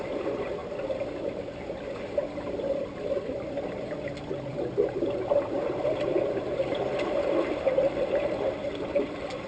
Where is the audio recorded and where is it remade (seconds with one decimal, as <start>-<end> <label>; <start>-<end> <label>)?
0.0-9.5 recorded